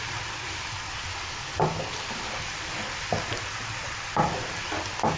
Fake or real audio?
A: real